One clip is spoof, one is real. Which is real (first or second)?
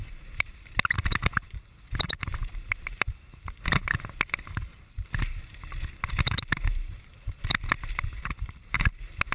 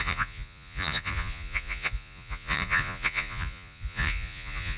first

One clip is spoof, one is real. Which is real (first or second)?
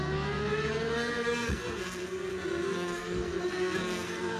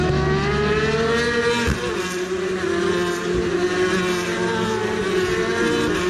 second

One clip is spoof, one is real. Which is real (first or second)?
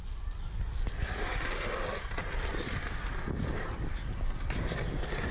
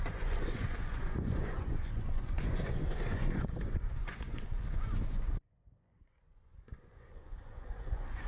first